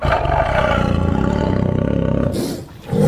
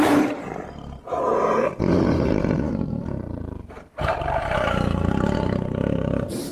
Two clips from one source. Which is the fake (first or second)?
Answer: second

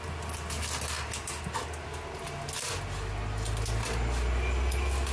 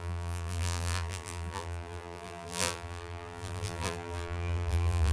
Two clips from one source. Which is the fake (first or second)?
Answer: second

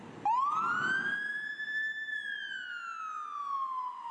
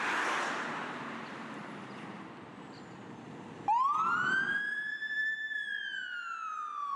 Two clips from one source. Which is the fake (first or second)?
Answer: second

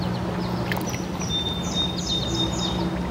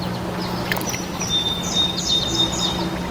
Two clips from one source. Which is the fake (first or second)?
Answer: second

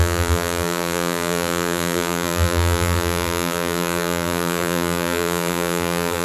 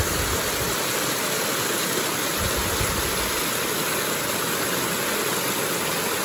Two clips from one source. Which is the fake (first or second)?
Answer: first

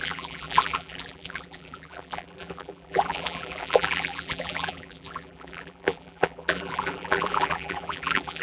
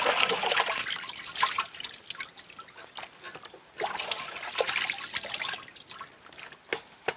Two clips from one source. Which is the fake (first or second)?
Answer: first